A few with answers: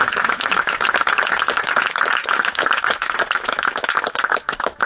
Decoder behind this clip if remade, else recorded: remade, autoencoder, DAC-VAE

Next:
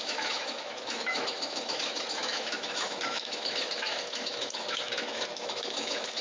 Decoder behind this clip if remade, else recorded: remade, autoencoder, DAC-VAE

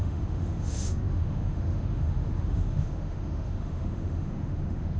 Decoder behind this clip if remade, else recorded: remade, autoencoder, DAC-VAE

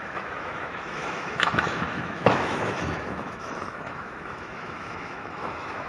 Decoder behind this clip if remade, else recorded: remade, autoencoder, DAC-VAE